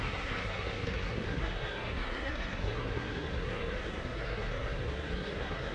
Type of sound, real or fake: fake